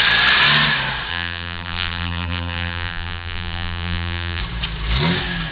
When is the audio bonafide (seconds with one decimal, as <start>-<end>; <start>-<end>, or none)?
0.0-1.1; 4.4-5.5